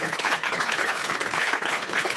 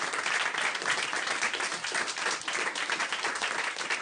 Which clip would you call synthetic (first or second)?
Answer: first